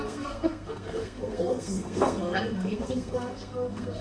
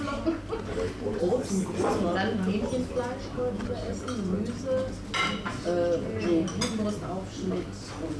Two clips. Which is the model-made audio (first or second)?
first